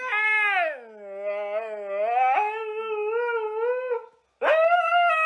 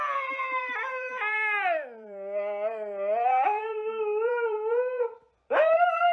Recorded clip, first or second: first